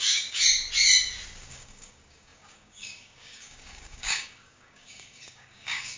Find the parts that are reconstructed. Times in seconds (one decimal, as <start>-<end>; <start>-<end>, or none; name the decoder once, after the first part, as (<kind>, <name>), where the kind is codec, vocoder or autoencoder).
0.0-0.4 (codec, DAC); 1.4-6.0